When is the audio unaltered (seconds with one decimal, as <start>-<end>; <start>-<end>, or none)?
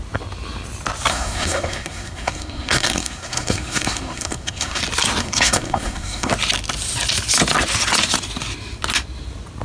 0.0-1.1; 4.8-5.2; 6.3-9.6